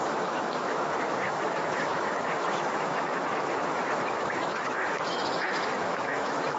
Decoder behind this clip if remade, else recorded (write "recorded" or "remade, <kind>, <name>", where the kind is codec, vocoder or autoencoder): remade, autoencoder, DAC-VAE